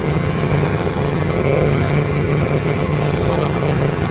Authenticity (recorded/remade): remade